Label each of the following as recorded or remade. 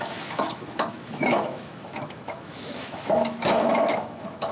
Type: remade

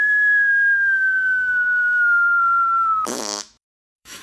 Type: remade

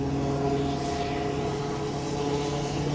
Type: recorded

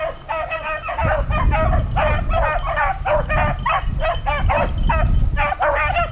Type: recorded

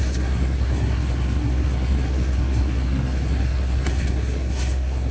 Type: remade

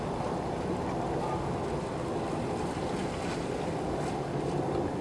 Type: recorded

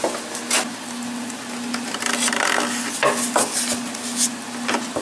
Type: recorded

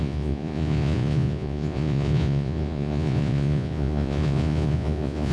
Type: remade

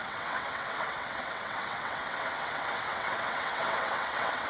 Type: remade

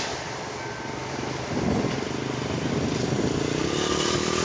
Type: recorded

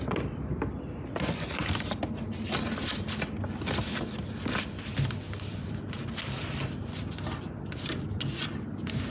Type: recorded